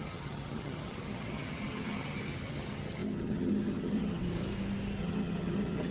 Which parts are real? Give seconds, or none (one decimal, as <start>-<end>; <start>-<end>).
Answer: 4.2-5.0